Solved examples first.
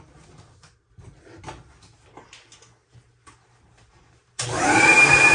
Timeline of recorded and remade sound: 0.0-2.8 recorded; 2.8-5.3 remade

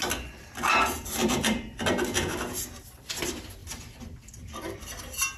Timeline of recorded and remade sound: 0.0-3.6 recorded; 3.6-5.0 remade; 5.0-5.4 recorded

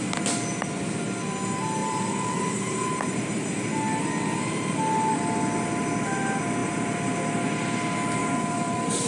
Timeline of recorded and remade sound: 0.0-1.8 recorded; 1.8-2.4 remade; 2.4-8.2 recorded; 8.2-9.1 remade

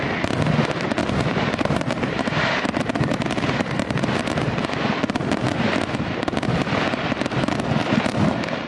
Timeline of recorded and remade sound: 0.0-1.0 recorded; 1.0-4.0 remade; 4.0-5.5 recorded; 5.5-6.2 remade; 6.2-7.8 recorded; 7.8-8.7 remade

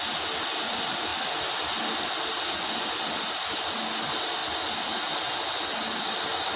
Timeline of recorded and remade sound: 0.0-6.6 recorded